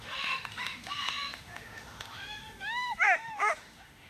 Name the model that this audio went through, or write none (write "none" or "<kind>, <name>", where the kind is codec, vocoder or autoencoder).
autoencoder, DAC-VAE